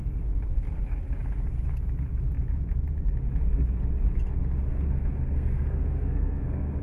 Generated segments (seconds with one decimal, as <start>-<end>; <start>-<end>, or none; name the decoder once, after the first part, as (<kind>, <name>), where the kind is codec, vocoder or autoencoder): 4.7-6.8 (codec, SNAC)